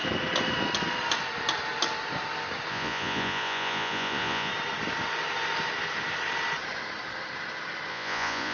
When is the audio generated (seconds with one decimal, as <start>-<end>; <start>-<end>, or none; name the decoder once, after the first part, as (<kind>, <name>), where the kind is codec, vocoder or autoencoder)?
2.7-4.5 (vocoder, Vocos); 7.9-8.5